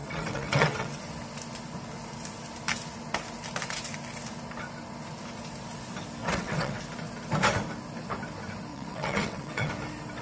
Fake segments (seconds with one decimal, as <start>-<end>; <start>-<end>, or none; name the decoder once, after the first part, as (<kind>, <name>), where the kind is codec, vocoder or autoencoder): 0.0-1.0 (vocoder, WaveNeXt); 6.2-6.8; 8.7-9.7